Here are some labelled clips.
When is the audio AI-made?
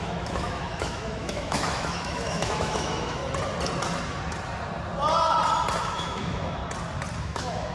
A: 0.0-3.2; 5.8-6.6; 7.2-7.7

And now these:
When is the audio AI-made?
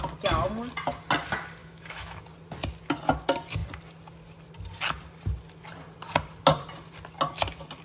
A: 1.6-2.2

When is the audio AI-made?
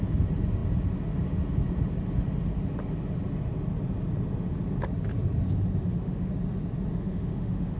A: 5.8-6.3; 6.9-7.8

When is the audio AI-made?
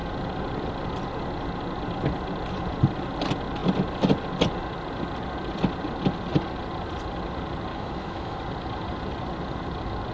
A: 7.7-8.4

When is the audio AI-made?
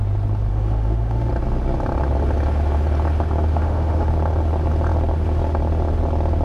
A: 0.5-1.3; 3.5-4.1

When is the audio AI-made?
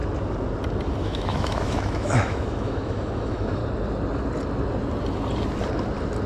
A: 1.0-3.6